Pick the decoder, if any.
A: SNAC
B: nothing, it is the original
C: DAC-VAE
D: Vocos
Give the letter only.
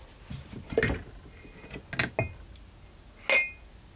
B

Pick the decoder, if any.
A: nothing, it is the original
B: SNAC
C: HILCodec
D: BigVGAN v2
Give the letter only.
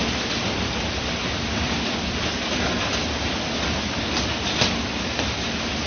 A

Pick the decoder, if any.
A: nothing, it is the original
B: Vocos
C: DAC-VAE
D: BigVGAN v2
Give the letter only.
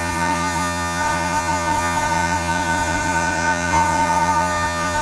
B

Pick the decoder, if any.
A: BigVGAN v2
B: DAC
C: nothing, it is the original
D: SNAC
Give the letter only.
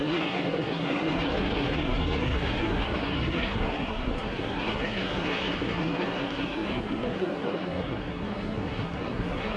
D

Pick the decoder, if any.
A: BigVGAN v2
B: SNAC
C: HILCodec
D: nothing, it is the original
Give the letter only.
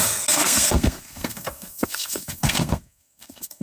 B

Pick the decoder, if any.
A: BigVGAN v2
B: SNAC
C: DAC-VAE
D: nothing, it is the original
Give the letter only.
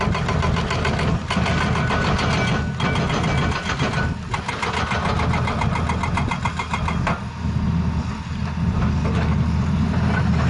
D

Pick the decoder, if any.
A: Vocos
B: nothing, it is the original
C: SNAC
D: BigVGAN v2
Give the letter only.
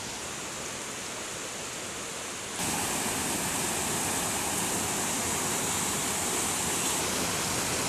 B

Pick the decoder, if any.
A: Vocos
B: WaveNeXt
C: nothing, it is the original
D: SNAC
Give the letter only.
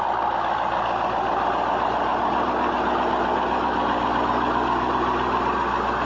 C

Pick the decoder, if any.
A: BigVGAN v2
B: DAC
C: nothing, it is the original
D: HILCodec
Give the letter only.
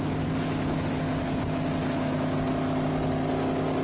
C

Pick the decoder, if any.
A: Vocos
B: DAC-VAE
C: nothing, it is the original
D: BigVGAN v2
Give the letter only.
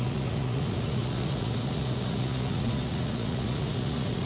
A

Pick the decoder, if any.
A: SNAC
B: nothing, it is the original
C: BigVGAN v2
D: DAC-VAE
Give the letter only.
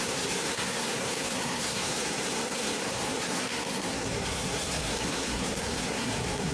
A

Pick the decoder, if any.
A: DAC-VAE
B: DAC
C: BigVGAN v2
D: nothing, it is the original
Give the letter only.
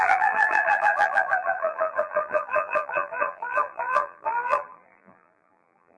C